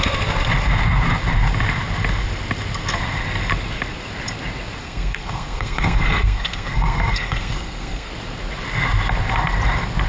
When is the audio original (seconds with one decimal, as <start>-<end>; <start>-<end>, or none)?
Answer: 0.0-4.8; 8.1-10.1